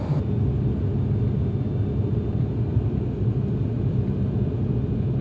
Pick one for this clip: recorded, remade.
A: recorded